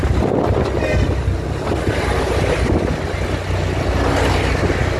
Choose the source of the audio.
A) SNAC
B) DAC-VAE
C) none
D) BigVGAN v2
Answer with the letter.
C